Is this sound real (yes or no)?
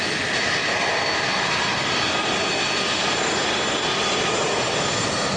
yes